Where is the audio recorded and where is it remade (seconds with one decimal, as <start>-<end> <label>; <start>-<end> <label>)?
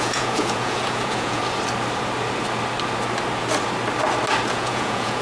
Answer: 0.0-1.4 remade; 1.4-4.5 recorded; 4.5-5.2 remade